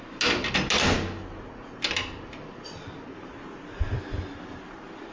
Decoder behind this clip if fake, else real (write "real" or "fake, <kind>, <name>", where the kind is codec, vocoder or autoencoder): real